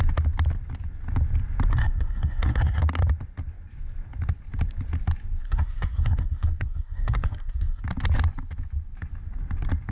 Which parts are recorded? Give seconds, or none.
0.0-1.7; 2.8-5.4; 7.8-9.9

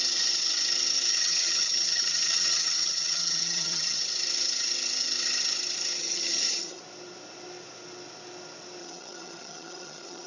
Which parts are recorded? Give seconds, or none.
0.0-1.1; 4.0-6.0; 6.8-8.8

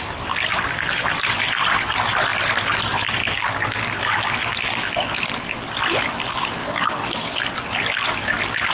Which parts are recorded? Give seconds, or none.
0.0-3.2; 3.8-6.6; 7.4-8.7

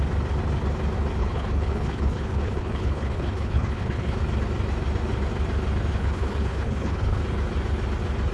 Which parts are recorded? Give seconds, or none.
0.0-1.2; 4.2-5.9; 7.2-8.3

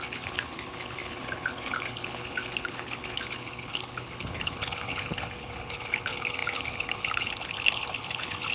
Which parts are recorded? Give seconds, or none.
none

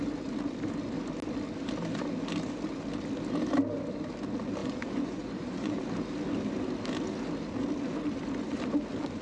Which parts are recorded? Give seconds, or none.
0.0-4.6; 5.8-9.2

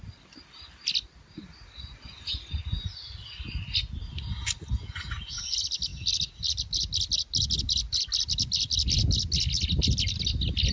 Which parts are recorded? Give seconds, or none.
0.0-10.7